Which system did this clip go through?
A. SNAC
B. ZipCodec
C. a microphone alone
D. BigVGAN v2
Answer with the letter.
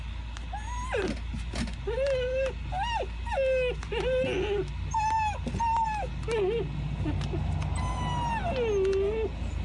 C